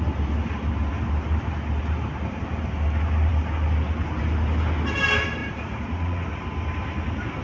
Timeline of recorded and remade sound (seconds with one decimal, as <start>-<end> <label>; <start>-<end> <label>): 0.0-5.4 recorded; 5.4-6.4 remade; 6.4-7.4 recorded